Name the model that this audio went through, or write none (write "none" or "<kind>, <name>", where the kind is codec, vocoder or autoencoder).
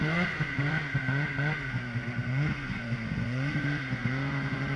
vocoder, Vocos